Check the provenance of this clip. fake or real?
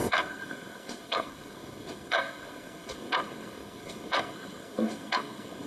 fake